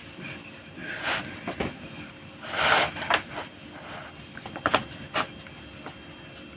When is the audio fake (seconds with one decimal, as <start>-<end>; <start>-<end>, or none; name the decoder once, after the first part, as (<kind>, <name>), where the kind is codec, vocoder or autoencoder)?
none